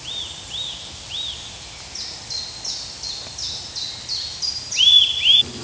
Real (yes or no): yes